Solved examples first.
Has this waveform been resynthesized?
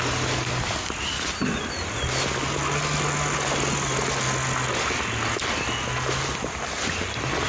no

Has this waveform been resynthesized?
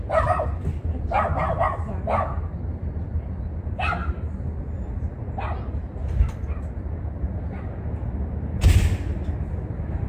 no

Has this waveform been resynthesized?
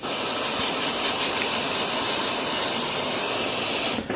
no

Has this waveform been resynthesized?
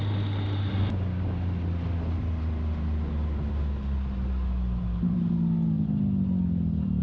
no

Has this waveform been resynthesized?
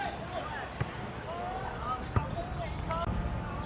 no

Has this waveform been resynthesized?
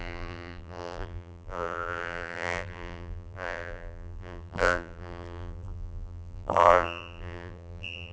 yes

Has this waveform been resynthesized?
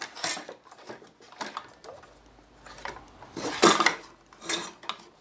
no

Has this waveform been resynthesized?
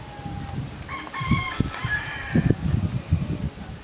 no